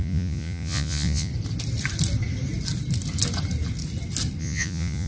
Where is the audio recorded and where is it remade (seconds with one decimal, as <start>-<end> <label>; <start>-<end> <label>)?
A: 0.0-1.3 remade; 1.3-4.4 recorded; 4.4-5.1 remade